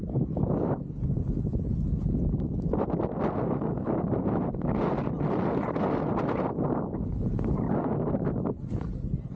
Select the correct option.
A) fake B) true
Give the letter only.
B